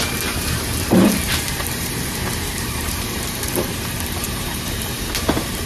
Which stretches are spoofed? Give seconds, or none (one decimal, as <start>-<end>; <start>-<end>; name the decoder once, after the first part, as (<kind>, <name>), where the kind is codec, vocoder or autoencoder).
0.0-5.7 (vocoder, BigVGAN v2)